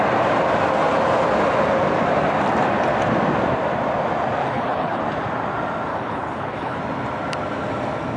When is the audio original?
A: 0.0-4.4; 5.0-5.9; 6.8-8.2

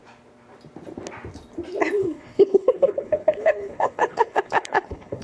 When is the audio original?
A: 0.0-2.0

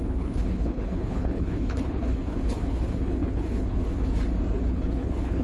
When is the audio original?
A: 4.1-4.7